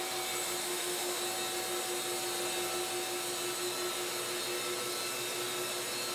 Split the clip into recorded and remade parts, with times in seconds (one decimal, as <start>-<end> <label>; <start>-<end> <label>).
0.0-0.6 recorded; 0.6-1.2 remade; 1.2-6.1 recorded